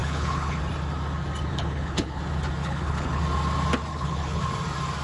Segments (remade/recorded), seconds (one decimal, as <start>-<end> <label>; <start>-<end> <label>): 0.0-0.6 remade; 0.6-1.5 recorded; 1.5-2.2 remade; 2.2-2.6 recorded; 2.6-3.2 remade; 3.2-3.9 recorded; 3.9-4.4 remade; 4.4-5.0 recorded